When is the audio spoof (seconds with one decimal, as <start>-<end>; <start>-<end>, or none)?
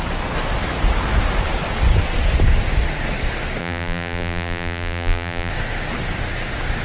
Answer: 3.6-5.5